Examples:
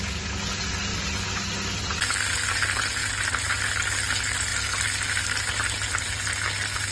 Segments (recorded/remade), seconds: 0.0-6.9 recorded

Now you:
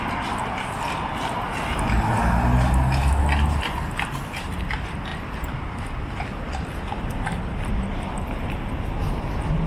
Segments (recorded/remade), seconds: 0.0-9.7 recorded

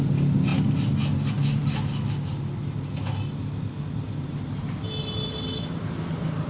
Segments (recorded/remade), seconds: 0.0-6.5 recorded